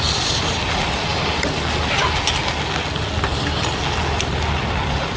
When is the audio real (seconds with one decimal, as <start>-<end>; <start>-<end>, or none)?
1.1-4.2